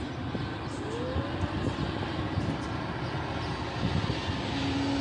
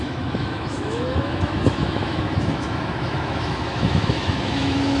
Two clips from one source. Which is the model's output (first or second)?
second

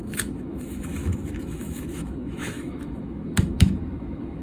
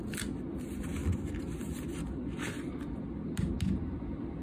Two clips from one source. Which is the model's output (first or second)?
first